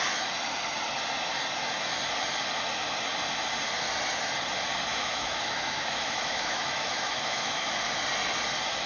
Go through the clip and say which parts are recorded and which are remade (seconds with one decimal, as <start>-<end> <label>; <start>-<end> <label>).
0.0-4.9 recorded; 4.9-7.7 remade; 7.7-8.9 recorded